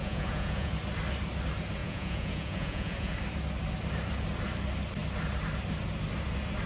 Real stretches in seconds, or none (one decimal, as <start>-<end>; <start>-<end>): 0.7-1.8; 3.1-6.7